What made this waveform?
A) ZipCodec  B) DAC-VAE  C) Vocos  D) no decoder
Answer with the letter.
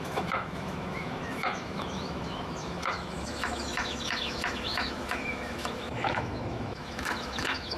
B